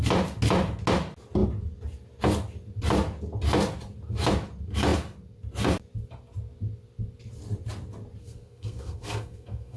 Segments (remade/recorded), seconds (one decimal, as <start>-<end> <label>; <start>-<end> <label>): 0.0-8.2 recorded; 8.2-9.8 remade